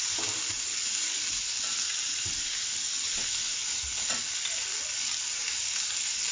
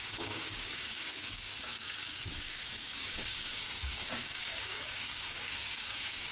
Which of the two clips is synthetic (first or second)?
second